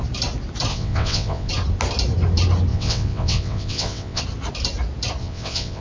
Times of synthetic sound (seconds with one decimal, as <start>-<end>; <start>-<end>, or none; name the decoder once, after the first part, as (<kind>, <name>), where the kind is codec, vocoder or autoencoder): 0.7-1.5 (vocoder, WaveNeXt); 2.7-4.2; 5.2-5.8